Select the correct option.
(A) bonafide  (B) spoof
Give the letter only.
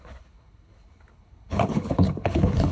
B